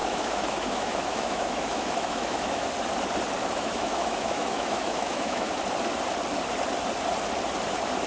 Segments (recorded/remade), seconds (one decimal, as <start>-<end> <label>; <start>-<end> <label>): 0.0-2.7 remade; 2.7-3.4 recorded; 3.4-5.5 remade; 5.5-8.1 recorded